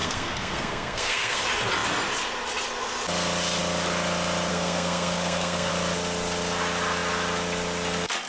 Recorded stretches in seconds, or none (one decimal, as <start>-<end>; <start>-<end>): 1.4-4.5; 5.7-8.3

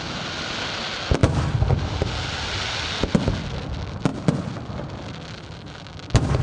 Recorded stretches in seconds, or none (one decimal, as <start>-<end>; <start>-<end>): 0.0-6.4

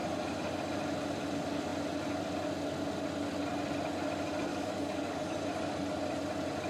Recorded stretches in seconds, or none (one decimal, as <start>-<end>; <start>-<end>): 0.0-4.5; 5.4-6.7